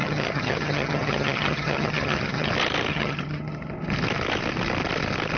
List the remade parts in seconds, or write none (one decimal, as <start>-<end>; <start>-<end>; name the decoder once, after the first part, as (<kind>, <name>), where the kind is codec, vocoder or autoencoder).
0.0-2.5 (vocoder, HiFi-GAN); 2.9-3.7